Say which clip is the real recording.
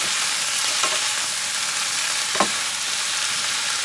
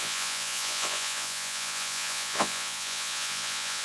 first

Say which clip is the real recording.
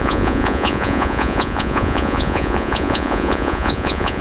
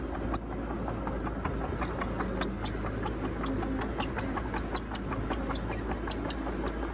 second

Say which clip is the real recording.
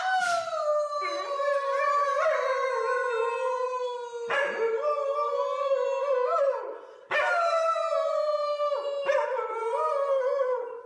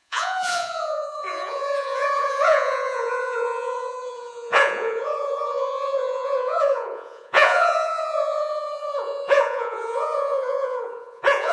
first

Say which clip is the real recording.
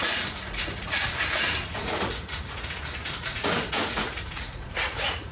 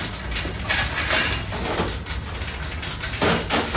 second